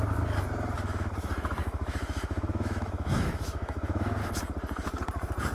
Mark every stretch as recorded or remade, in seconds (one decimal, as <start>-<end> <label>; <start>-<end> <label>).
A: 0.0-1.6 recorded; 1.6-4.2 remade; 4.2-5.5 recorded